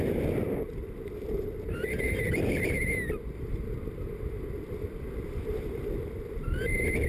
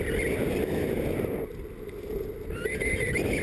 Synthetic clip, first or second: first